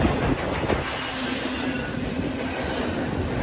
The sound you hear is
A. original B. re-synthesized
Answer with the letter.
A